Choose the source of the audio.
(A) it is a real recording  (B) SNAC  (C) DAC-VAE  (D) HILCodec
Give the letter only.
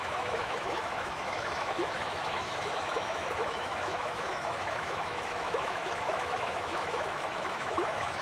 C